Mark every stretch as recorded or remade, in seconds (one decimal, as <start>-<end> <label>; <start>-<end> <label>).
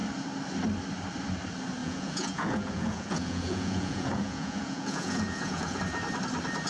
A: 0.0-1.8 recorded; 1.8-5.8 remade; 5.8-6.7 recorded